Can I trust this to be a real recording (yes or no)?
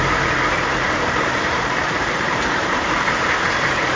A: no